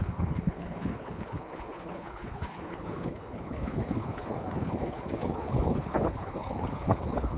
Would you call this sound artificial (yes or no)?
yes